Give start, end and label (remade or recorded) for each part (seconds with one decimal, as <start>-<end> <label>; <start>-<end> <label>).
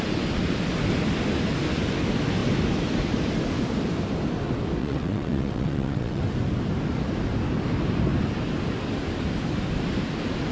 0.0-4.8 recorded; 4.8-6.2 remade; 6.2-10.5 recorded